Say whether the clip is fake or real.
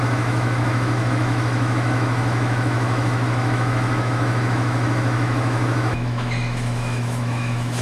fake